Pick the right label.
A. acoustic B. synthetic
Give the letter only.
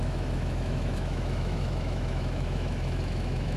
B